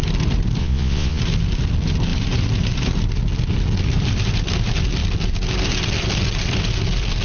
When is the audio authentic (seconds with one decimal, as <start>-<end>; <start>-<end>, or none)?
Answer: 0.0-0.6; 1.2-7.2

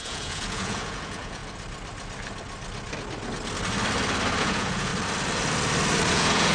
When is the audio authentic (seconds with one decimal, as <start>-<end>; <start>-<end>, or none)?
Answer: 1.4-4.4; 4.9-6.1

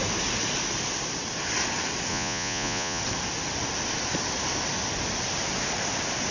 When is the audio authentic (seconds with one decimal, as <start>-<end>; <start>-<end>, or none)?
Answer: 0.0-2.1; 3.0-6.3

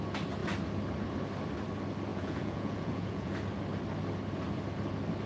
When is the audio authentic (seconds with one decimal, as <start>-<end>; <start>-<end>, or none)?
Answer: 0.0-2.1; 3.3-5.3

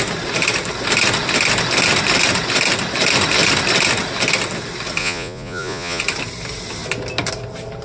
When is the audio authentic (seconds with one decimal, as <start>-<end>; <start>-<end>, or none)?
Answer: 0.0-5.0; 6.0-7.8

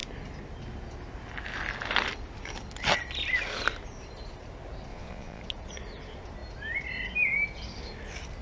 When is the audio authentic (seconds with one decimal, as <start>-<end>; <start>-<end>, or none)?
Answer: 0.0-4.9; 5.4-8.4